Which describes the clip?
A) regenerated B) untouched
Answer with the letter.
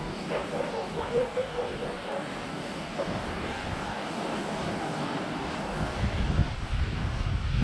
A